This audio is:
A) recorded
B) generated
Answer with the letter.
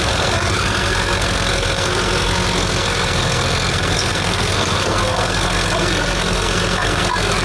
B